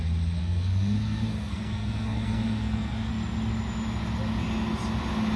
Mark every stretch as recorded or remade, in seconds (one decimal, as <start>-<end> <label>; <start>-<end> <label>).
0.0-0.4 recorded; 0.4-3.1 remade; 3.1-5.4 recorded